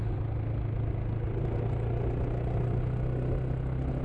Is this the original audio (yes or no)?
yes